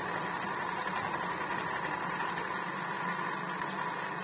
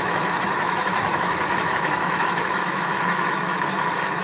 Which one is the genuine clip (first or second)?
first